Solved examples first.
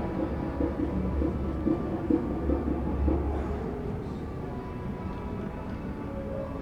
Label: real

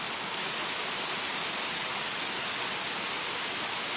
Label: real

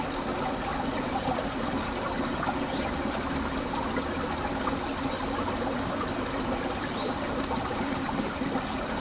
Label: real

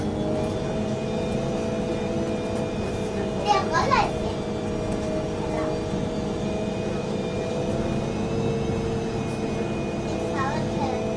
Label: real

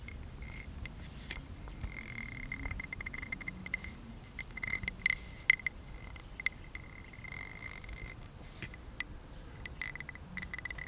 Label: real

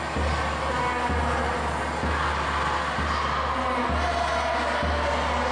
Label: real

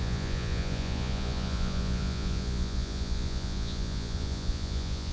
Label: fake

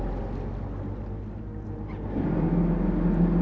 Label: real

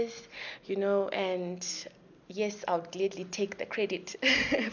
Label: real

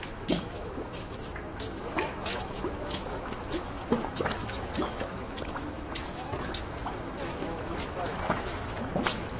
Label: fake